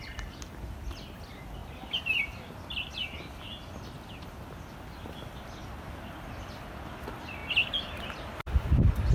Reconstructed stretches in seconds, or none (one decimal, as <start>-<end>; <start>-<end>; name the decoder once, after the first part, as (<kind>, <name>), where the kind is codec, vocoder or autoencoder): none